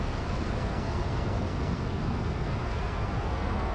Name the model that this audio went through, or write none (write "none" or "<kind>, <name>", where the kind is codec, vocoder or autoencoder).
codec, SNAC